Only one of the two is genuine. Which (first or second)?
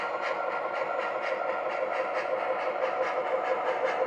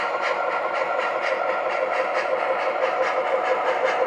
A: first